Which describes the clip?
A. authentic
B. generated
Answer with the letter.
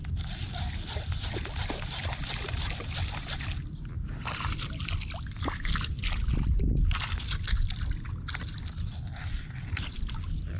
A